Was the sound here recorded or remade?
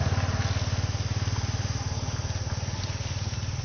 recorded